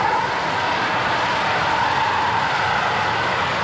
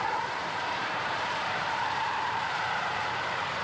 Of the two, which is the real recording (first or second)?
first